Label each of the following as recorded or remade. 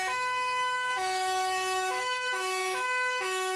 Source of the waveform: remade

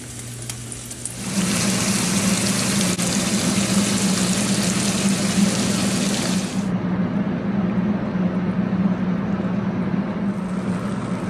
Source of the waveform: recorded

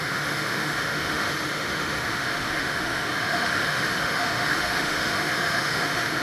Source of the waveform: remade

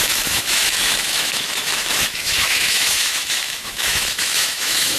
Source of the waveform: remade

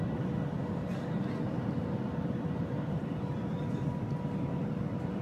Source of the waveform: recorded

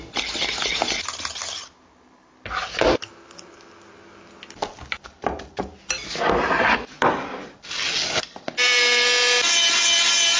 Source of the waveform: recorded